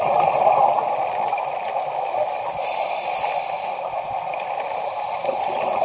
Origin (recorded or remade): recorded